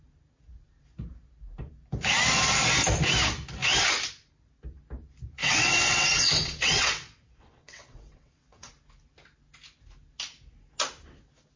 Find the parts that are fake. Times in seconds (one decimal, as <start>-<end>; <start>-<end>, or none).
5.4-8.7